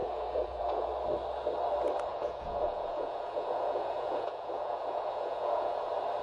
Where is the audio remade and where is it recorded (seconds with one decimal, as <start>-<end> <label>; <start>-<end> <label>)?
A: 0.0-0.9 remade; 0.9-2.1 recorded; 2.1-5.8 remade; 5.8-6.2 recorded